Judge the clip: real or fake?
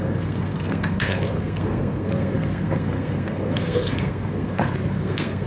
fake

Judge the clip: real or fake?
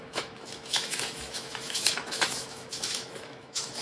fake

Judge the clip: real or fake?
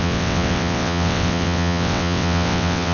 fake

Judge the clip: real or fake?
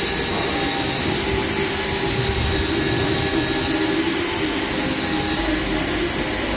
real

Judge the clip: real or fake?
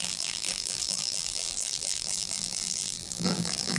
fake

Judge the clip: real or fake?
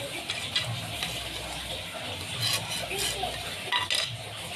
real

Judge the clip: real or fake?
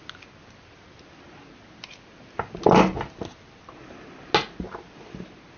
real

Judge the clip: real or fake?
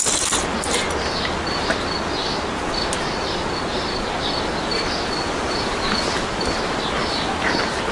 real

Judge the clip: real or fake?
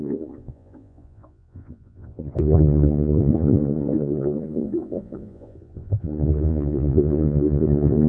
fake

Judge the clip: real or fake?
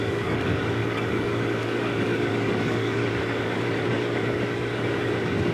fake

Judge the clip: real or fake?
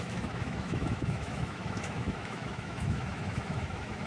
fake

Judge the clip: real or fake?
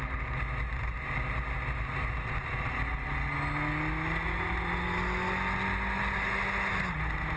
real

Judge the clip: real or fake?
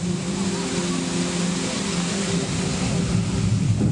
real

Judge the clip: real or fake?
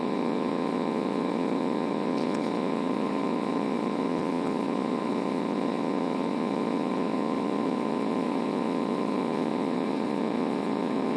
fake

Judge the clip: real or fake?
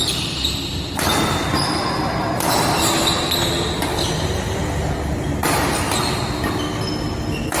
real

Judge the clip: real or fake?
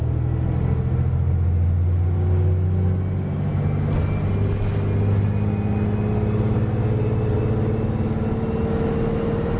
real